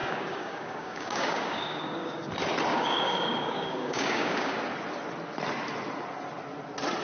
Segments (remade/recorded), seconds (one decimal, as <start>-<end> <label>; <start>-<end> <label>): 0.0-2.2 remade; 2.2-2.7 recorded; 2.7-4.5 remade; 4.5-7.0 recorded